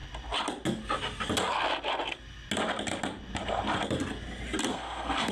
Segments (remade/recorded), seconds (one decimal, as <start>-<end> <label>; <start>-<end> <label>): 0.0-4.7 recorded; 4.7-5.3 remade